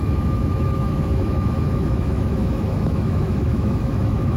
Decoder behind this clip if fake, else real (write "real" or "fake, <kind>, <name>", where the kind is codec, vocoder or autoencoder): fake, autoencoder, DAC-VAE